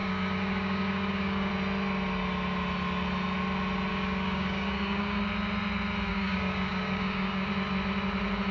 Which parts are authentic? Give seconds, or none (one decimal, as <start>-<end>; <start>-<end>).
1.5-3.9; 5.2-6.1; 7.5-8.5